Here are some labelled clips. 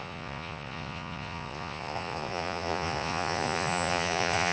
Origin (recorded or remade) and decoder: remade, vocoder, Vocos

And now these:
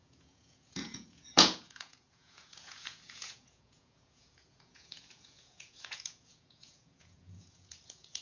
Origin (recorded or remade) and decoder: remade, vocoder, Vocos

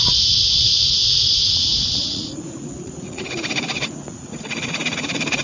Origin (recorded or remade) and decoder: remade, vocoder, Vocos